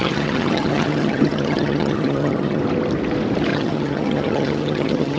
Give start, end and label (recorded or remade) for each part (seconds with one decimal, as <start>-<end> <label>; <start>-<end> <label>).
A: 0.0-2.6 remade; 2.6-3.5 recorded; 3.5-5.2 remade